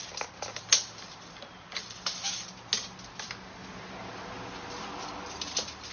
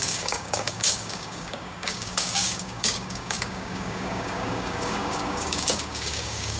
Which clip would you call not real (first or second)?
second